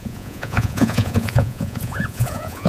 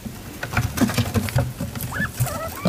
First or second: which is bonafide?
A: second